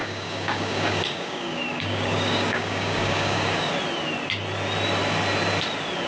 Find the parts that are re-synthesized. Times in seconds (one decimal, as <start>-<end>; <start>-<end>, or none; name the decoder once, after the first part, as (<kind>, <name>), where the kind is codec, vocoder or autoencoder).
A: 0.0-3.7 (codec, DAC)